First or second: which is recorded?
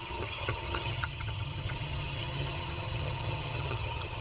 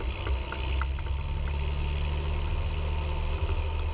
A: second